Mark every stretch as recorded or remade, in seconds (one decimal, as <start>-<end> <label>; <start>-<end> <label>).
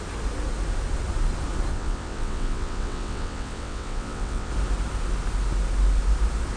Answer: 0.0-1.7 recorded; 1.7-4.5 remade; 4.5-6.6 recorded